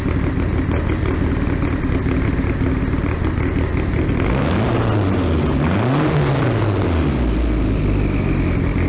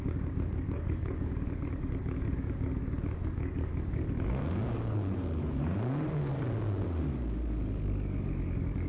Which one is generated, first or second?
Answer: second